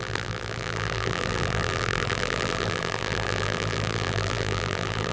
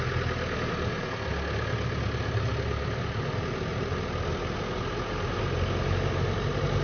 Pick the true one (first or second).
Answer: second